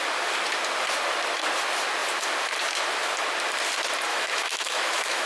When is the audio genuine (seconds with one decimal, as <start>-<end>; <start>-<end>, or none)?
0.0-4.1